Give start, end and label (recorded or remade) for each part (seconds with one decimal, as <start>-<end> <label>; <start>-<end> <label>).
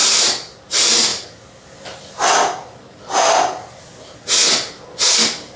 0.0-5.6 recorded